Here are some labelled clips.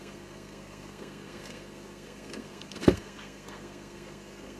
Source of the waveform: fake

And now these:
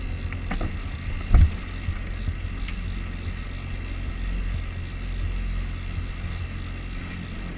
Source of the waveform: real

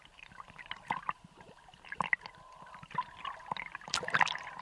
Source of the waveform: real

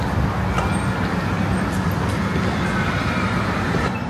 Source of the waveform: real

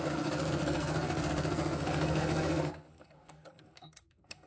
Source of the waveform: fake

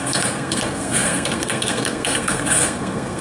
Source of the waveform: fake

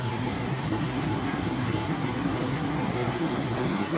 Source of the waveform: fake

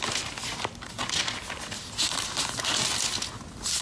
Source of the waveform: real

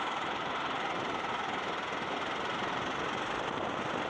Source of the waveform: real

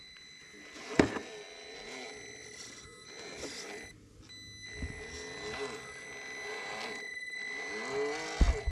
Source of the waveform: real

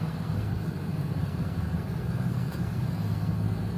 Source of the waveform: fake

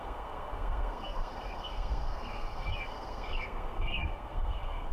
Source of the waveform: fake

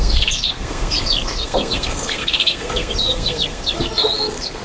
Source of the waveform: fake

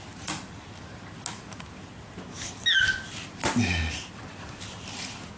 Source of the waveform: real